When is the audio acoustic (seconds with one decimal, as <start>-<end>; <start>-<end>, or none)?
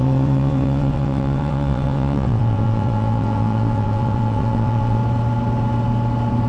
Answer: 5.0-6.5